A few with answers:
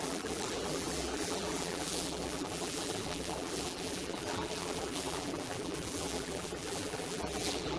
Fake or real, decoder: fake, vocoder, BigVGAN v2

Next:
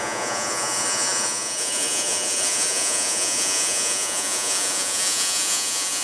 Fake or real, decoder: fake, vocoder, Vocos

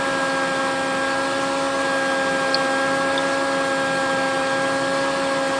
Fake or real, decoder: real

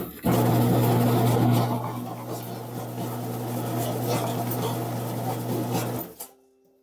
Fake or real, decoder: real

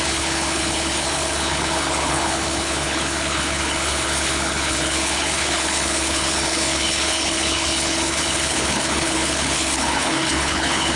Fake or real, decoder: fake, codec, HILCodec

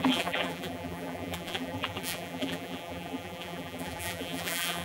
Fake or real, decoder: fake, vocoder, BigVGAN v2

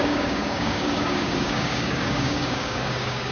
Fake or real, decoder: fake, codec, DAC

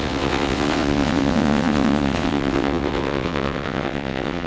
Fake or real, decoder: fake, vocoder, WaveNeXt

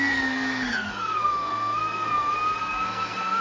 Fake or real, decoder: fake, codec, SNAC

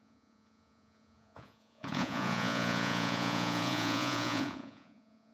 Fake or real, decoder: fake, vocoder, Vocos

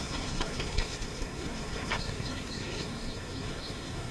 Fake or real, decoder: fake, codec, SNAC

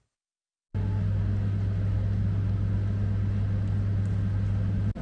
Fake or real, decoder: real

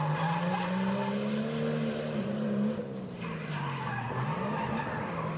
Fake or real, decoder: real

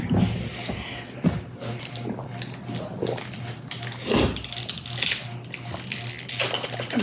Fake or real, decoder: real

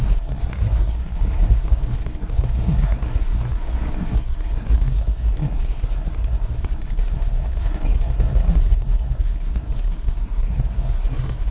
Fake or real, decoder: fake, codec, SNAC